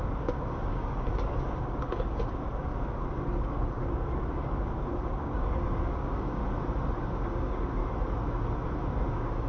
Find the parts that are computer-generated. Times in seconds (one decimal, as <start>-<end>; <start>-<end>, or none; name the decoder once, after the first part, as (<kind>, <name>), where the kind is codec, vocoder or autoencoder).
0.0-6.4 (codec, DAC); 7.0-7.8; 9.1-9.5